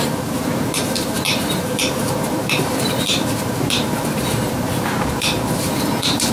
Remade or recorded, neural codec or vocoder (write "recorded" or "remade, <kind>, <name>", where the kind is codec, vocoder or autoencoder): remade, vocoder, BigVGAN v2